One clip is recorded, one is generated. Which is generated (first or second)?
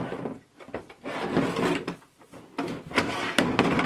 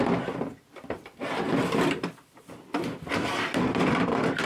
second